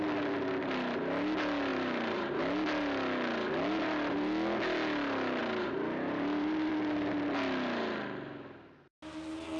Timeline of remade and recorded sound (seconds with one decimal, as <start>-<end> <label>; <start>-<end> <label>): 0.0-1.7 recorded; 1.7-2.4 remade; 2.4-5.4 recorded; 5.4-6.7 remade; 6.7-9.6 recorded